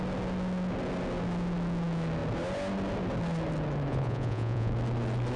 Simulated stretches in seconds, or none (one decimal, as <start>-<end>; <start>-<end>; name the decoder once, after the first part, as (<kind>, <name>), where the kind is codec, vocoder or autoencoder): 3.9-4.7 (vocoder, Vocos)